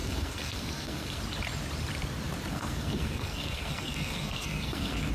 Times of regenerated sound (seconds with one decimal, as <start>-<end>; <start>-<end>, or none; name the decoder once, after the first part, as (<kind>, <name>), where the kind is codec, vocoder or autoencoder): 0.0-1.2 (codec, SNAC); 2.5-5.1